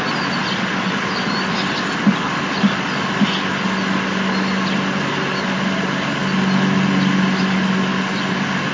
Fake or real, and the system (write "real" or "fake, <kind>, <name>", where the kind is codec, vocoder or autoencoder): real